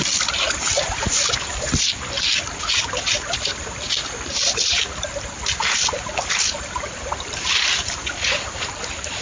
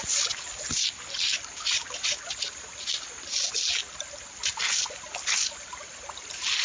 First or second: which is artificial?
first